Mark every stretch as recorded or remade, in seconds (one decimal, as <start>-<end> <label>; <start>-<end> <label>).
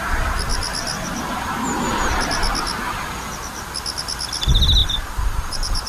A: 0.0-4.8 recorded; 4.8-5.9 remade